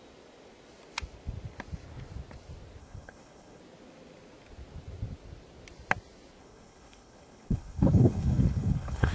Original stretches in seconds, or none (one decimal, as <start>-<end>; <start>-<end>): 0.0-2.8; 3.6-6.4